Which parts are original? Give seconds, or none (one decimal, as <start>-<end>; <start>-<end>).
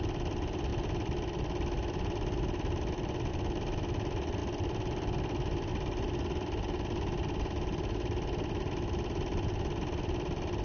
0.0-10.6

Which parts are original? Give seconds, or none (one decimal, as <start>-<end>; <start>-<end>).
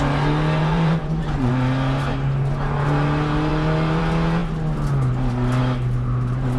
0.0-0.6; 1.5-6.6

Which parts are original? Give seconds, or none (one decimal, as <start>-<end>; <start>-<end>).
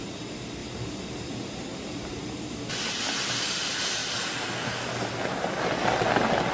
0.0-0.6; 2.7-4.0; 5.5-6.5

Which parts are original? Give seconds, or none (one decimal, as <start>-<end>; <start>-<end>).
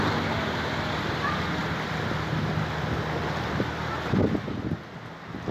0.0-5.5